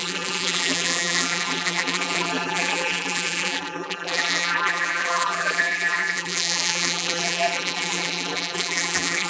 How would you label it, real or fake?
fake